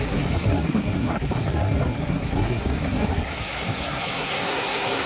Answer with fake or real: fake